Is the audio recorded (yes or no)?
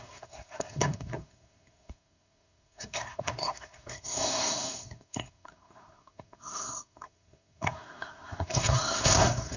no